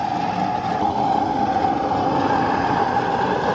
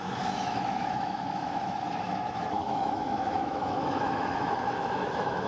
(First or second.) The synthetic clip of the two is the second